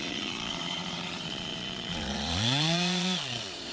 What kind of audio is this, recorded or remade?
remade